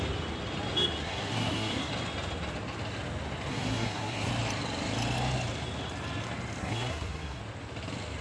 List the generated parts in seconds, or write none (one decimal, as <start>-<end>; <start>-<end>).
1.0-1.9; 3.5-4.3; 6.6-7.4